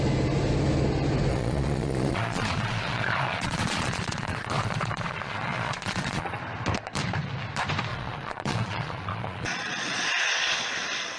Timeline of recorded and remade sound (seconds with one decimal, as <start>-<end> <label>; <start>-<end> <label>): 0.0-1.3 recorded; 1.3-6.4 remade; 6.4-7.9 recorded; 7.9-10.7 remade; 10.7-11.2 recorded